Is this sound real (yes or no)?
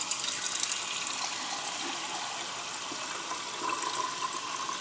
yes